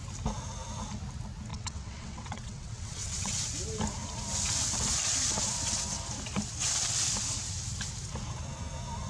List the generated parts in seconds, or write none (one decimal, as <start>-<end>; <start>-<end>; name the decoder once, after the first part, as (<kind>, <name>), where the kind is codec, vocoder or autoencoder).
1.5-3.4 (vocoder, WaveNeXt)